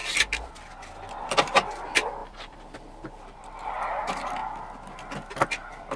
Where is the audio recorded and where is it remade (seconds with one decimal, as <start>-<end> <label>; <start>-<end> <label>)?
0.0-1.2 recorded; 1.2-4.4 remade; 4.4-5.1 recorded; 5.1-6.0 remade